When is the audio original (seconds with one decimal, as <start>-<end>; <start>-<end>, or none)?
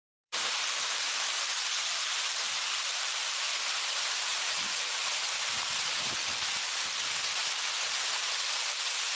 6.2-7.8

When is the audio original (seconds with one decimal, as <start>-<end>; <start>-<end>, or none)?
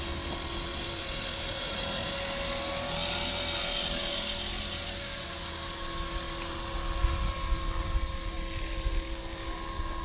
0.0-0.7; 2.1-10.0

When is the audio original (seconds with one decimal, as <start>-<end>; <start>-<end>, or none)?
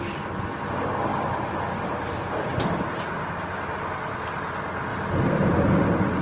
0.0-1.1; 3.0-4.9; 5.7-6.2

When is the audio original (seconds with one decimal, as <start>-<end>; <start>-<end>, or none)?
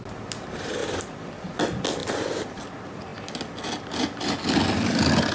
0.0-0.8; 1.5-2.0; 2.7-5.3